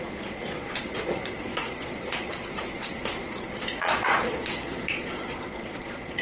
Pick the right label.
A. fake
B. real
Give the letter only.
A